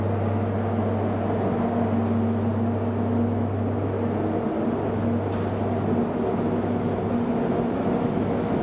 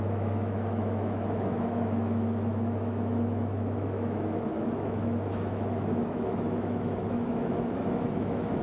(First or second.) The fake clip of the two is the second